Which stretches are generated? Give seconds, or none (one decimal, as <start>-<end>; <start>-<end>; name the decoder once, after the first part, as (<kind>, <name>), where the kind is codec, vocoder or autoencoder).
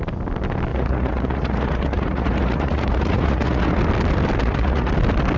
0.7-3.8 (vocoder, Vocos); 4.4-4.9